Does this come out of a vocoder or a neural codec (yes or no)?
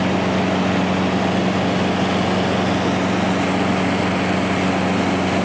no